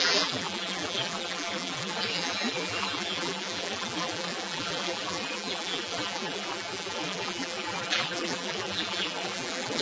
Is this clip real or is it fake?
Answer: fake